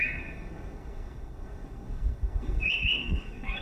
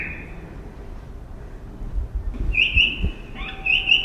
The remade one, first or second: first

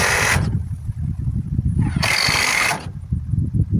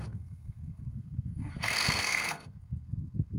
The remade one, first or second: second